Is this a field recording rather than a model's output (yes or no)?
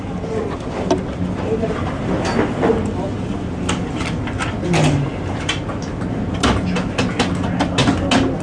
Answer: yes